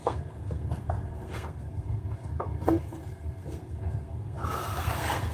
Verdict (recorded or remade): remade